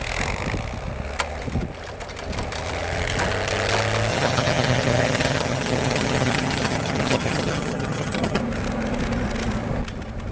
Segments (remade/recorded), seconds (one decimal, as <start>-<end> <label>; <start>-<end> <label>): 0.0-4.1 recorded; 4.1-8.4 remade; 8.4-10.3 recorded